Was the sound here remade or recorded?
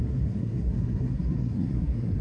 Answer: remade